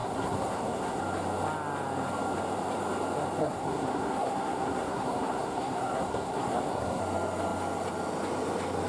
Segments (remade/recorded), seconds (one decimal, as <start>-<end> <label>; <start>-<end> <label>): 0.0-1.0 remade; 1.0-3.4 recorded; 3.4-7.0 remade; 7.0-8.9 recorded